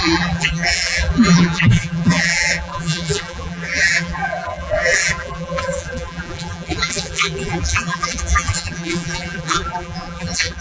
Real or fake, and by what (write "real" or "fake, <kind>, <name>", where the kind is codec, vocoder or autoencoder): fake, vocoder, BigVGAN v2